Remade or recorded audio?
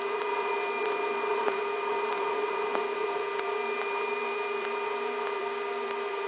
remade